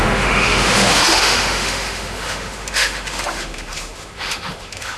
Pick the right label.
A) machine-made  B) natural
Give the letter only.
A